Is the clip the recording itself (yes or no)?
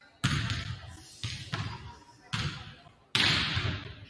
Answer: yes